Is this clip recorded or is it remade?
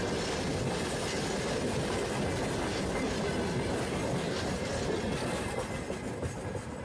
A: recorded